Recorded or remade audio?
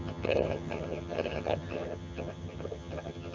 remade